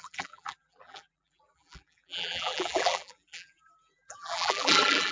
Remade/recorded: remade